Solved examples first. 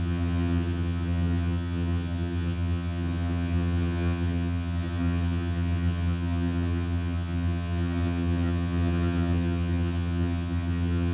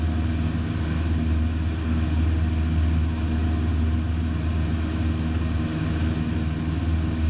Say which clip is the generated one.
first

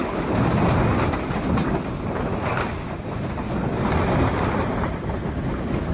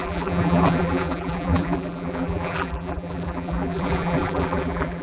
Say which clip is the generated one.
second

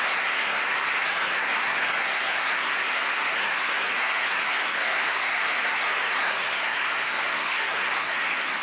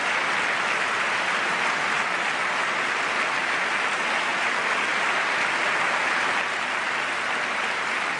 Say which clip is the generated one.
first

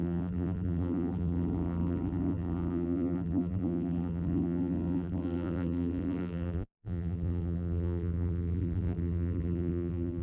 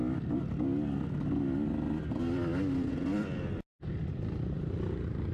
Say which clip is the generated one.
first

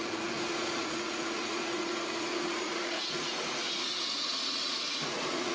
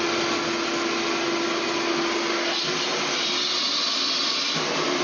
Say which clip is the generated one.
first